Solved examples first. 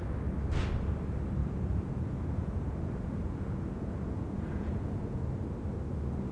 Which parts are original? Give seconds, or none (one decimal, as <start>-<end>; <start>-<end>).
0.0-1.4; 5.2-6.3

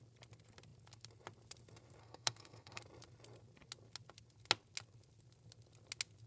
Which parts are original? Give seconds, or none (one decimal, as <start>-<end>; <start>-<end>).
0.0-2.0; 2.8-6.3

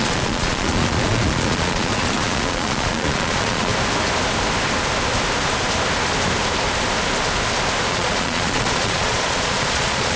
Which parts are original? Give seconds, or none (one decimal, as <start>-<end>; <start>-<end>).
3.7-7.9